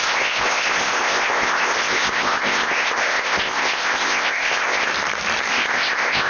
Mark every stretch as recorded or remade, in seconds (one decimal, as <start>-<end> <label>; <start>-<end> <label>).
0.0-4.9 remade; 4.9-5.5 recorded; 5.5-6.3 remade